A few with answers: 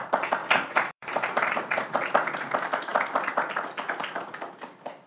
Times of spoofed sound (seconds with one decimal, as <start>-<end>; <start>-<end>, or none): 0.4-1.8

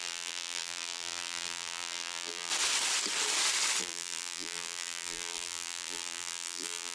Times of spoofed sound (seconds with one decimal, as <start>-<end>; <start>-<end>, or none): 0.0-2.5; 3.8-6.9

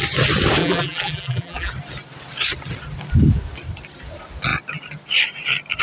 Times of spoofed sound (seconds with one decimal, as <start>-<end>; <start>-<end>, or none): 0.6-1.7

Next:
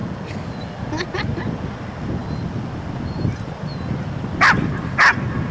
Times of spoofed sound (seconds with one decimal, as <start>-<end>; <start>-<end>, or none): 0.8-5.5

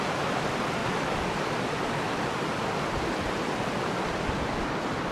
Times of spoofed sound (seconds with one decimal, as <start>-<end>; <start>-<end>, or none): none

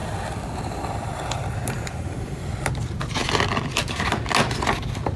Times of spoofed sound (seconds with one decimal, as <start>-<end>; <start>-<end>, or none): 0.0-2.4; 3.2-3.8

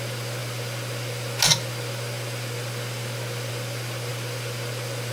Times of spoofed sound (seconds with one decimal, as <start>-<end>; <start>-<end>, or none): none

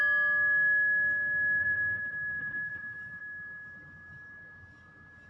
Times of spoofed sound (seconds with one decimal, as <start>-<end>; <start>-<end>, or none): 1.6-3.2